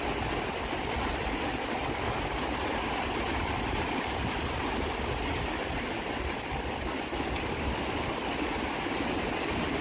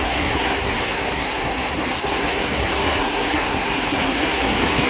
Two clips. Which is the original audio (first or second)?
first